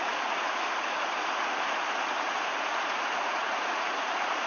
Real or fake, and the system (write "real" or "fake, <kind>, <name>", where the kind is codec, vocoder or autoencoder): fake, vocoder, Vocos